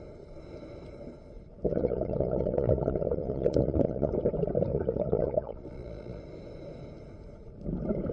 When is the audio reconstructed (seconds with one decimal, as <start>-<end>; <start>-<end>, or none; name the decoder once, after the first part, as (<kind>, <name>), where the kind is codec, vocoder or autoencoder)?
1.7-4.1 (vocoder, Vocos); 4.7-6.2